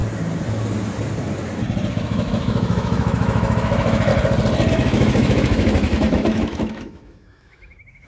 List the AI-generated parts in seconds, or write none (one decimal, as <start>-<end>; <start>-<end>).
1.9-4.1; 4.7-8.1